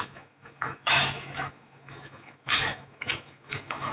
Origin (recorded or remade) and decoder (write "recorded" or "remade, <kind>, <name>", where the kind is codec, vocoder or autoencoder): remade, autoencoder, DAC-VAE